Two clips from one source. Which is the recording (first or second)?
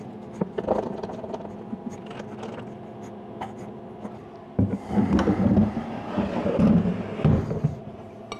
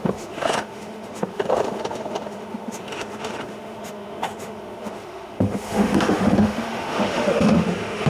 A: first